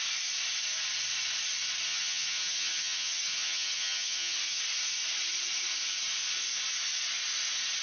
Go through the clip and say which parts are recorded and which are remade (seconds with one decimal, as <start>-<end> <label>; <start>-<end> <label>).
0.0-1.9 recorded; 1.9-4.6 remade; 4.6-7.8 recorded

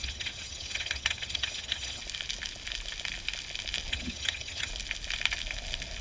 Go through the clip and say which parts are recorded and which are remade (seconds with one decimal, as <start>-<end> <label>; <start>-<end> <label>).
0.0-2.0 remade; 2.0-3.9 recorded; 3.9-4.7 remade; 4.7-6.0 recorded

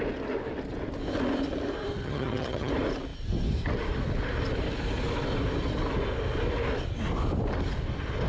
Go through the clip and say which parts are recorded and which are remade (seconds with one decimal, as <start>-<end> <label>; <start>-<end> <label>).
0.0-2.0 recorded; 2.0-2.7 remade; 2.7-8.3 recorded

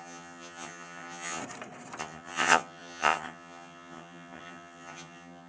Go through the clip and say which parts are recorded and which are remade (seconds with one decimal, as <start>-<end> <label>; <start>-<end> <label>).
0.0-1.4 remade; 1.4-2.0 recorded; 2.0-5.5 remade

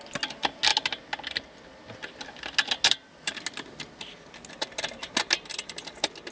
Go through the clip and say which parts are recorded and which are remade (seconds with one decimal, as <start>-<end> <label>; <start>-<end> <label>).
0.0-6.3 recorded

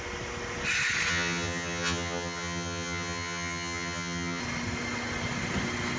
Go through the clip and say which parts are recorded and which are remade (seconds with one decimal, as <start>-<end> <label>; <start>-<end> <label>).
0.0-1.1 recorded; 1.1-4.4 remade; 4.4-6.0 recorded